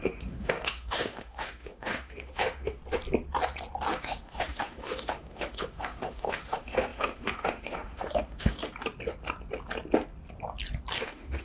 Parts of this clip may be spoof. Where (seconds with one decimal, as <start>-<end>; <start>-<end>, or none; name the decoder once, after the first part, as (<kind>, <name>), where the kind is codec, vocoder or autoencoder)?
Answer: 0.0-2.8 (autoencoder, DAC-VAE); 4.0-8.6; 11.0-11.4